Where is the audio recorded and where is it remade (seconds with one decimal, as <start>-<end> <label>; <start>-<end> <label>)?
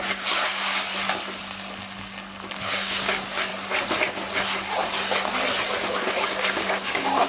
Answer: 0.0-0.9 remade; 0.9-2.5 recorded; 2.5-3.5 remade; 3.5-5.9 recorded; 5.9-7.3 remade